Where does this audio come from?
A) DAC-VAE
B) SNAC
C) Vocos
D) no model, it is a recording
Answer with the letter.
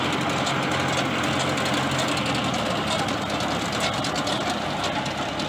D